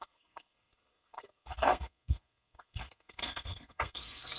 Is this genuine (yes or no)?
no